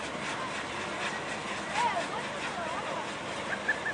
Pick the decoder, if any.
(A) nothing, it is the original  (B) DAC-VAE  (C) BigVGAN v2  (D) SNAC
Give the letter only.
A